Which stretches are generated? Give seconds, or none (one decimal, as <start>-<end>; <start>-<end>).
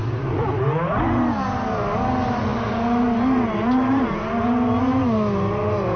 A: none